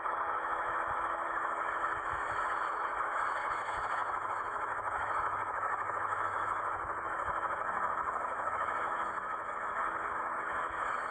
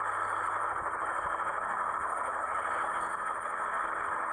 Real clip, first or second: second